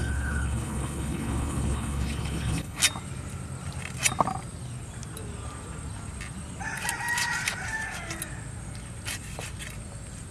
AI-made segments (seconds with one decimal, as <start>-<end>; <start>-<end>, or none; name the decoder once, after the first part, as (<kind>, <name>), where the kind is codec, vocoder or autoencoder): 0.0-2.8 (codec, HILCodec)